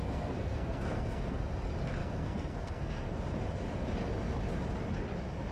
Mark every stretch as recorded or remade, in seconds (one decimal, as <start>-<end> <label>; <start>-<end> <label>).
0.0-1.4 remade; 1.4-2.0 recorded; 2.0-3.2 remade; 3.2-5.5 recorded